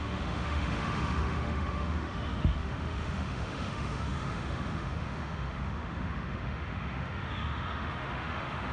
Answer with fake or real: fake